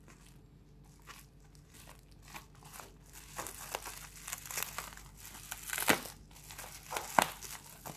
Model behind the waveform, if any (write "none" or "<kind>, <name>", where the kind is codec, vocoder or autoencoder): none